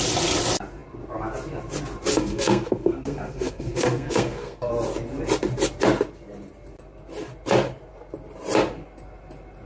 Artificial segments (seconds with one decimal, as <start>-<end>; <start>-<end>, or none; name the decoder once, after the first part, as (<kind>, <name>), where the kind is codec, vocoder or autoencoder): 2.1-4.7 (codec, SNAC)